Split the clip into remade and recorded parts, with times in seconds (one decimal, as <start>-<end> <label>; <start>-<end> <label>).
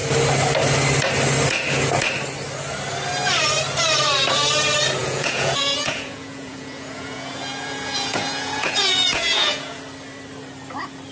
0.0-5.0 recorded; 5.0-9.8 remade; 9.8-11.1 recorded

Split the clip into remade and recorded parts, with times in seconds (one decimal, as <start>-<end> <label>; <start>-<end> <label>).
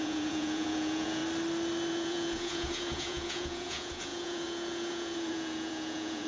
0.0-1.2 remade; 1.2-1.9 recorded; 1.9-6.3 remade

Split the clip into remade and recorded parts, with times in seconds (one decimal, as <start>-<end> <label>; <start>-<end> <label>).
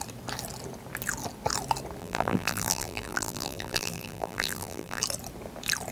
0.0-2.0 recorded; 2.0-5.0 remade; 5.0-5.9 recorded